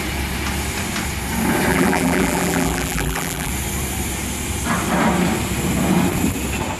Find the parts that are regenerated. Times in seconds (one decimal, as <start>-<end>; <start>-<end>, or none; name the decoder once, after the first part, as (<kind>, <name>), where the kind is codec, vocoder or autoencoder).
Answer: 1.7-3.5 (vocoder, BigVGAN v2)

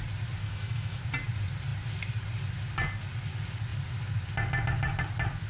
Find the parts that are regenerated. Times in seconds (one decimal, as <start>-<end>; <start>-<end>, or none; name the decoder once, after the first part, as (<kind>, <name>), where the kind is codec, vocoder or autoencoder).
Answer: 0.4-1.0 (autoencoder, DAC-VAE)

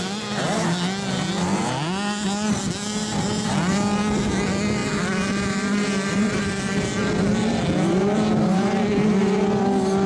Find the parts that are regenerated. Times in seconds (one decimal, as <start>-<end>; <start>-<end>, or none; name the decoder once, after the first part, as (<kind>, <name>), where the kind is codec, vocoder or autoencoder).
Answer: none

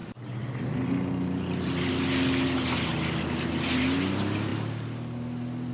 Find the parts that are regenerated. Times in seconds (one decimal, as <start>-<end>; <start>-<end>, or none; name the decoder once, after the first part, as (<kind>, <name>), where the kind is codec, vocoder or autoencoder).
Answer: 2.9-3.8 (vocoder, BigVGAN v2)

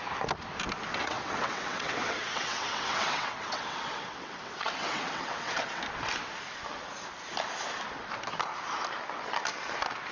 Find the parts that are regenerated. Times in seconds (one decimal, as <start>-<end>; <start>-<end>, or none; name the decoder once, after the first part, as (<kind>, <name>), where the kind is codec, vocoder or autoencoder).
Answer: 0.9-5.8 (vocoder, WaveNeXt)